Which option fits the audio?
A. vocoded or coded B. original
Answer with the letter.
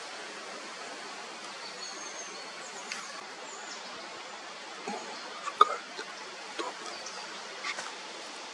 B